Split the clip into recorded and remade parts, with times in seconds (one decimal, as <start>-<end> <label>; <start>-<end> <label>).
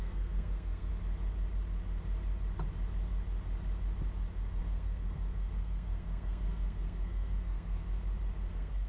0.0-0.9 remade; 0.9-4.6 recorded; 4.6-7.8 remade; 7.8-8.5 recorded; 8.5-8.9 remade